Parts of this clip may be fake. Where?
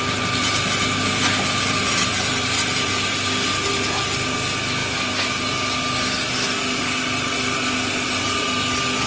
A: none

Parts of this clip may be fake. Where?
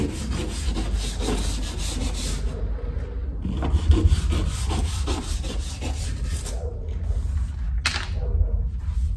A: none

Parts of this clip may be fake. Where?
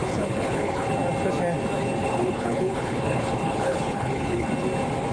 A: 0.0-0.9 (codec, HILCodec); 2.0-4.5